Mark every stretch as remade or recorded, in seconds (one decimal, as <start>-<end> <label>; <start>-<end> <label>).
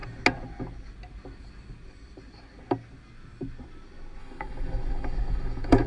0.0-4.2 recorded; 4.2-5.9 remade